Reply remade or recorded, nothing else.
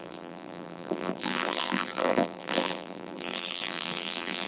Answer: remade